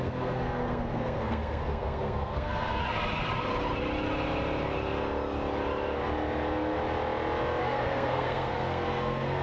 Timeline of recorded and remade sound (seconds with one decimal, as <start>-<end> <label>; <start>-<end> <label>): 0.0-2.8 remade; 2.8-7.6 recorded; 7.6-9.4 remade